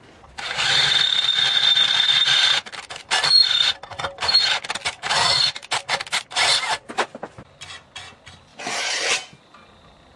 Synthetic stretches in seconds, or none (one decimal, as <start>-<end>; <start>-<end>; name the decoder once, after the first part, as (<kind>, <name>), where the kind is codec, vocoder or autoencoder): 8.5-9.1 (vocoder, BigVGAN v2)

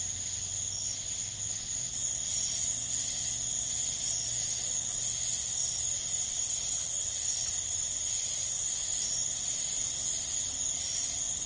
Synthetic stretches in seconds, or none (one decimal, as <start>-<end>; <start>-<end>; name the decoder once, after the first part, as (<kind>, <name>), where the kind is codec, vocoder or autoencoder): 5.3-8.0 (vocoder, BigVGAN v2); 8.9-9.9

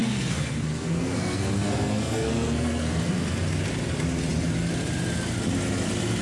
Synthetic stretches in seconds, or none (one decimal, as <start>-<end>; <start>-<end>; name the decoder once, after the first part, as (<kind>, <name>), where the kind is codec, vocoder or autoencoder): 0.0-3.1 (codec, SNAC)

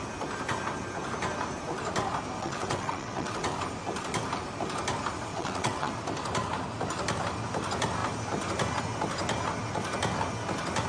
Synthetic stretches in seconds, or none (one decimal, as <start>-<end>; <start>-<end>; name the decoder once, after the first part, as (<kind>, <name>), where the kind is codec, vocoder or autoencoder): 2.4-3.5 (vocoder, WaveNeXt); 5.3-5.9

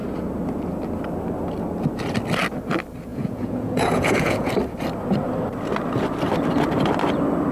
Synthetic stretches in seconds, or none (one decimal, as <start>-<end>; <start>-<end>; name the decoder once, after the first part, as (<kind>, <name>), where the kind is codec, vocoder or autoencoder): 3.1-4.5 (vocoder, Vocos)